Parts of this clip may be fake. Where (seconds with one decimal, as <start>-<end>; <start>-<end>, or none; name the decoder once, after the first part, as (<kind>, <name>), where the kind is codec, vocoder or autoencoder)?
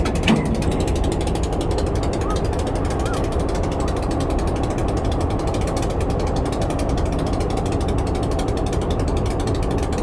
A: none